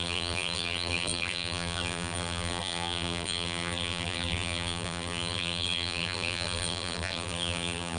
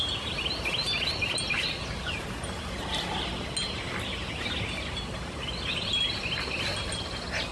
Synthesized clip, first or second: first